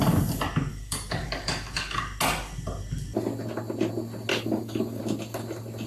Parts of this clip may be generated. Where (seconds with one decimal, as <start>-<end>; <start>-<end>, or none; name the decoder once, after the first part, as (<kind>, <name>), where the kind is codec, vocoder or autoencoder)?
0.7-2.0 (codec, DAC); 4.3-5.0